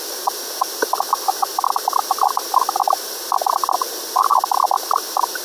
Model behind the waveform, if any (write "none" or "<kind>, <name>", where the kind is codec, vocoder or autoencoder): none